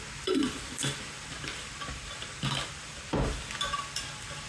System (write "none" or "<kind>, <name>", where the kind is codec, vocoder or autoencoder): none